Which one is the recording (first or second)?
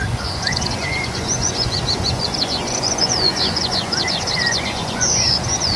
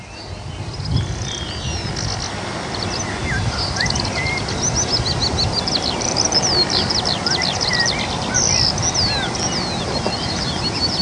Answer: second